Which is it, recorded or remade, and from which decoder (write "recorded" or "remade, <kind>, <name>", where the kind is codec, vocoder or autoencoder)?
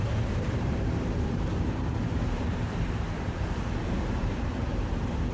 remade, vocoder, BigVGAN v2